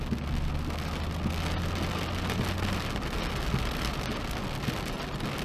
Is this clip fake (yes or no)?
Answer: no